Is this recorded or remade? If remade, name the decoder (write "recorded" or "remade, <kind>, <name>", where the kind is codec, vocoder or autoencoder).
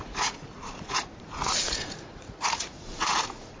remade, vocoder, Vocos